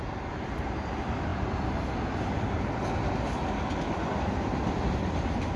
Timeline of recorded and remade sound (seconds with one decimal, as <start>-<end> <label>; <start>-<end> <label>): 0.0-5.6 recorded